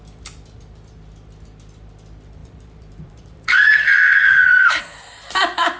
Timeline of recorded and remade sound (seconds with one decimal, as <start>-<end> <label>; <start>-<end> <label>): 0.0-2.4 recorded; 2.4-4.8 remade; 4.8-5.8 recorded

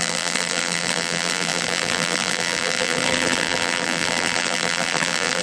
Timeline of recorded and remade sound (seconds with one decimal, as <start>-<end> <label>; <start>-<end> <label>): 0.0-5.4 remade

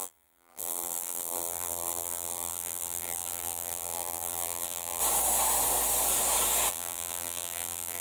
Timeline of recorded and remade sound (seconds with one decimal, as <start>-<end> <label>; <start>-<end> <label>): 0.0-5.0 remade; 5.0-6.7 recorded; 6.7-8.0 remade